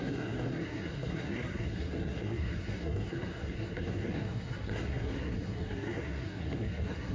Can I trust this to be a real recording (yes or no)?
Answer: no